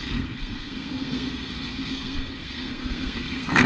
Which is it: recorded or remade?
remade